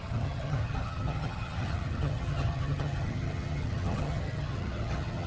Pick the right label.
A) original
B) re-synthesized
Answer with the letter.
B